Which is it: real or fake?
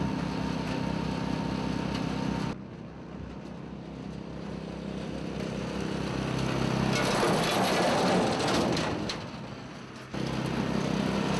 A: real